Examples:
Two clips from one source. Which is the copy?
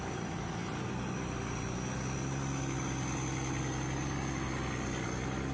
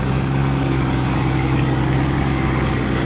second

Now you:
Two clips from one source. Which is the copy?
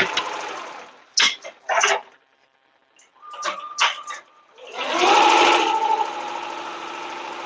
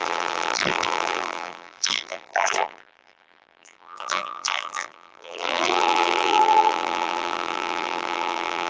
second